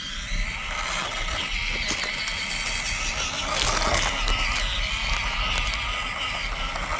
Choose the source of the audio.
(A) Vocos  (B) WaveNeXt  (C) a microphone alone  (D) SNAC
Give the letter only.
C